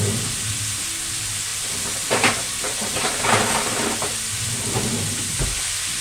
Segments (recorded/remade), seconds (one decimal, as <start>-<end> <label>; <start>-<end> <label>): 0.0-1.5 recorded; 1.5-3.2 remade; 3.2-6.0 recorded